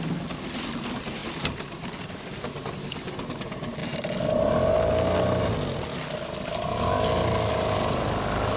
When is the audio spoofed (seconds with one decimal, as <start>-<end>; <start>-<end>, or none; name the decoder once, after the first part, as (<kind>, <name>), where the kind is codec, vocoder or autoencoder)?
none